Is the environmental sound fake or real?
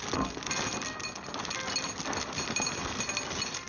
real